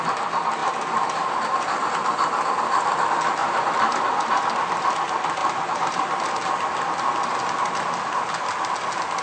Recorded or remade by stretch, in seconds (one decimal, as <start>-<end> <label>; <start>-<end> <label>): 0.0-0.6 recorded; 0.6-1.9 remade; 1.9-3.4 recorded; 3.4-4.0 remade; 4.0-5.4 recorded; 5.4-6.2 remade; 6.2-9.2 recorded